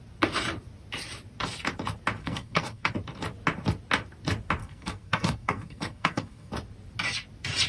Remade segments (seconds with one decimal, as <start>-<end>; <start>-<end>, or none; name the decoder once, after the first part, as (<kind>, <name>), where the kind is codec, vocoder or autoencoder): 2.2-2.9 (codec, SNAC); 4.6-6.5